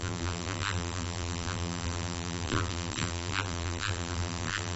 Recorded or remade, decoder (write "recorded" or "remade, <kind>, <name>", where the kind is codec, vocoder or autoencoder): remade, vocoder, BigVGAN v2